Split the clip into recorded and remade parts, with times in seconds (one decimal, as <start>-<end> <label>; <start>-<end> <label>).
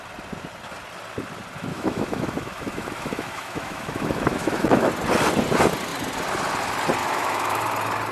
0.0-1.7 recorded; 1.7-4.9 remade; 4.9-7.0 recorded; 7.0-7.6 remade; 7.6-8.1 recorded